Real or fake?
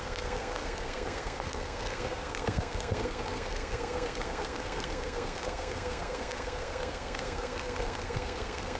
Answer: fake